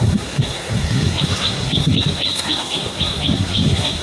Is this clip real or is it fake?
fake